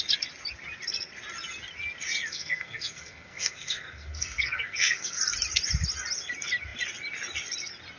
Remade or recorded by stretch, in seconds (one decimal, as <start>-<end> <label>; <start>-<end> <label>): 0.0-2.3 recorded; 2.3-5.2 remade; 5.2-8.0 recorded